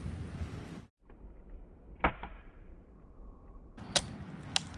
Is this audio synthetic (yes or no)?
no